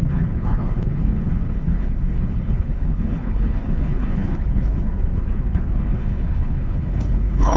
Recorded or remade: remade